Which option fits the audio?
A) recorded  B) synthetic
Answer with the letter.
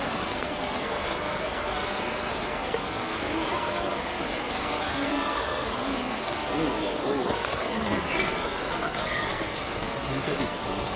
B